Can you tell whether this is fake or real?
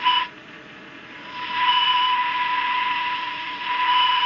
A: fake